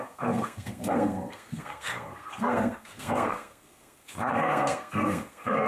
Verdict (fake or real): fake